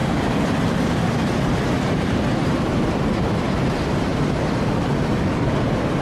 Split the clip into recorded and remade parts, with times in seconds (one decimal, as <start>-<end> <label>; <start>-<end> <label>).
0.0-3.6 remade; 3.6-6.0 recorded